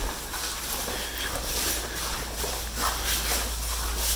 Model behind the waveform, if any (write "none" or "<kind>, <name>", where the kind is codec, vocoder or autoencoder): none